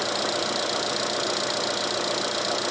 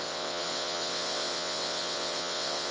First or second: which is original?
first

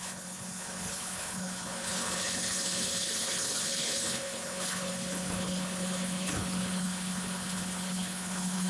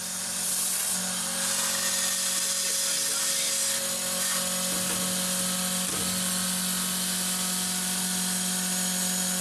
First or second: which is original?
second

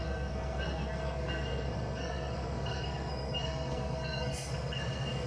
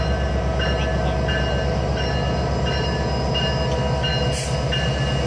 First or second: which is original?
second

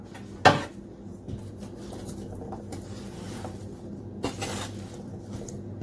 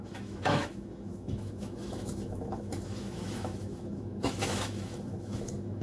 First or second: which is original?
first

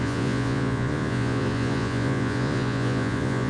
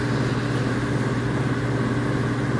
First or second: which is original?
second